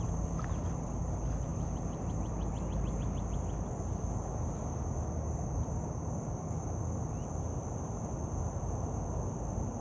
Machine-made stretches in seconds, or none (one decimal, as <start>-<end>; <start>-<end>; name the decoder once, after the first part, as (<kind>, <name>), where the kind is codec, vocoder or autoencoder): none